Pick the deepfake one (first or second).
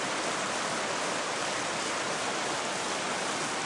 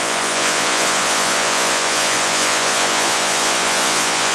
second